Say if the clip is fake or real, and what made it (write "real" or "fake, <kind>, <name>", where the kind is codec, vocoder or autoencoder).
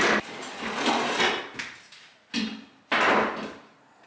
real